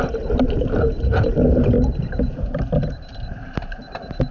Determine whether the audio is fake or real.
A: real